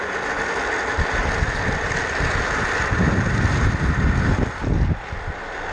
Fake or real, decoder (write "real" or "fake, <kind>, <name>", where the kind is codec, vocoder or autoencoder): real